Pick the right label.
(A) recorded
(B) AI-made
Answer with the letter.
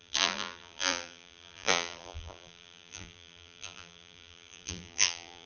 B